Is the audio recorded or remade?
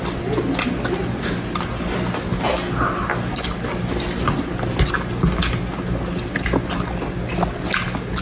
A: recorded